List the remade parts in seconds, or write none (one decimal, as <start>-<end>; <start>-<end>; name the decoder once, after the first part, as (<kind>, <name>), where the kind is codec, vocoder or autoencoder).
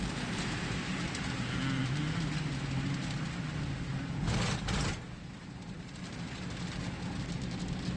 none